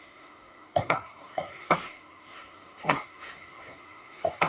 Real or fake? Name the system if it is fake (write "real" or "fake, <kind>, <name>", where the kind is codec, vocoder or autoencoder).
fake, codec, SNAC